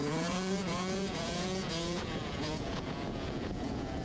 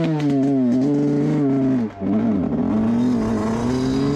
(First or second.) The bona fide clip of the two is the second